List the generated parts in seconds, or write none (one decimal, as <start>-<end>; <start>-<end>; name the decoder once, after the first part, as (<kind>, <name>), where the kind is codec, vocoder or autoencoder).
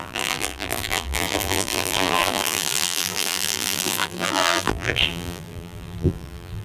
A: 0.0-6.6 (vocoder, BigVGAN v2)